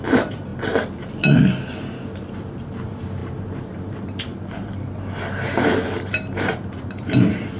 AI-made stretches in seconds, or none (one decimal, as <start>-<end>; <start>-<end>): 0.0-0.5; 2.7-7.6